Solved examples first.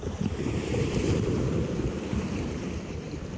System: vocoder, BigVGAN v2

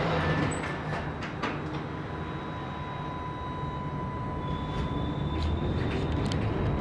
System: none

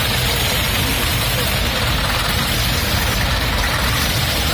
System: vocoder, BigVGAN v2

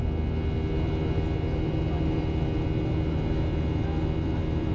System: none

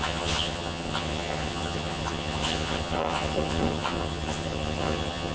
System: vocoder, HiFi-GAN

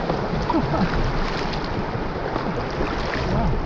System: none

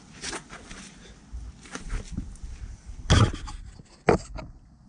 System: none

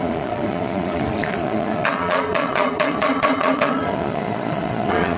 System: vocoder, Vocos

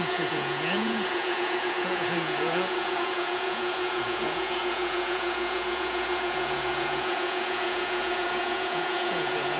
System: vocoder, Vocos